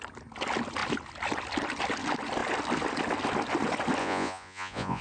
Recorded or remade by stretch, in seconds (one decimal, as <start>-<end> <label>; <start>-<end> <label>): 0.0-4.0 recorded; 4.0-5.0 remade